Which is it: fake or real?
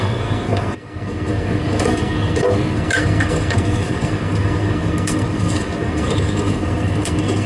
fake